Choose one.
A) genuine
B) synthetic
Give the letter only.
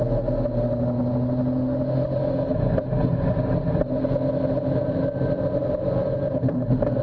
A